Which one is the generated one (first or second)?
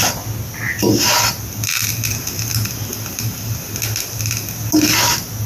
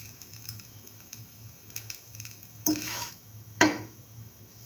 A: second